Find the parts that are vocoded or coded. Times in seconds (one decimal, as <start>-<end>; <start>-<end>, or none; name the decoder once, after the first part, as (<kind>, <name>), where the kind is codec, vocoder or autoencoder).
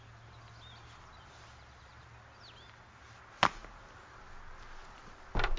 none